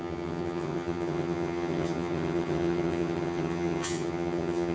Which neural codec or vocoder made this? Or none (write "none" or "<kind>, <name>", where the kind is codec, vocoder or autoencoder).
vocoder, HiFi-GAN